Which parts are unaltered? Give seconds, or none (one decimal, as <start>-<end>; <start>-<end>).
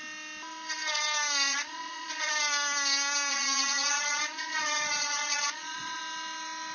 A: 0.0-1.5; 2.3-3.3; 6.0-6.7